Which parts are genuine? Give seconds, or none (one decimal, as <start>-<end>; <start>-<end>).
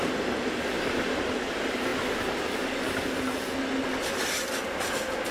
0.0-5.3